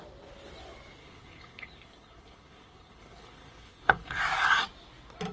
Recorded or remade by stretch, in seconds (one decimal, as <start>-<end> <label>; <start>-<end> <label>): 0.0-1.0 recorded; 1.0-4.2 remade; 4.2-5.3 recorded